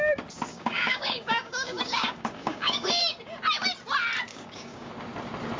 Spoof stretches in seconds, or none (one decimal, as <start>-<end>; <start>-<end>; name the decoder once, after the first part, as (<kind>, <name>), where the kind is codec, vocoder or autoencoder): 0.5-2.9 (codec, DAC); 4.3-4.9